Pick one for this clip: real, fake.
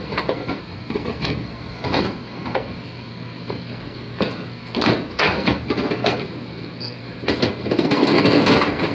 fake